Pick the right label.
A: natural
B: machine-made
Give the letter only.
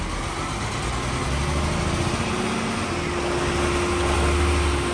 A